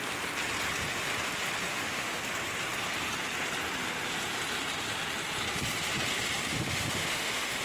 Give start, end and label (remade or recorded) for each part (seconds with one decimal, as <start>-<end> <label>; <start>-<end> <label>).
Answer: 0.0-1.7 recorded; 1.7-2.2 remade; 2.2-6.5 recorded; 6.5-7.6 remade